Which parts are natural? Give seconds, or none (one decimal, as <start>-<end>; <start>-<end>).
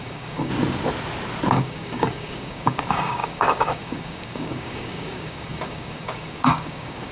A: 0.5-1.5